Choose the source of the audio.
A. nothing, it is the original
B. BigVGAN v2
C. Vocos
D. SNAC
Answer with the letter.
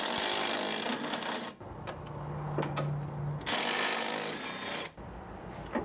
A